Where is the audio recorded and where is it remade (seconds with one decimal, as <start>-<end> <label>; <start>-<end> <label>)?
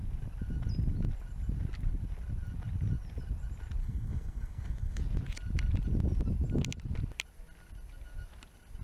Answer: 0.0-3.8 recorded; 3.8-5.0 remade; 5.0-8.8 recorded